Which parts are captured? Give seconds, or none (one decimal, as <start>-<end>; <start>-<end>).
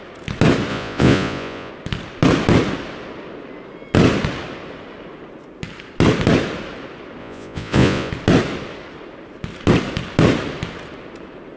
0.0-0.7; 1.7-7.2; 8.1-11.6